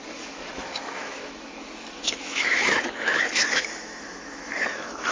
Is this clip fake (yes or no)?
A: yes